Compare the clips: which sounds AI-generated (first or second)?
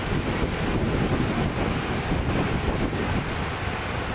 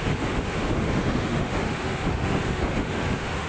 second